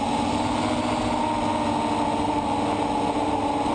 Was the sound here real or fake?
real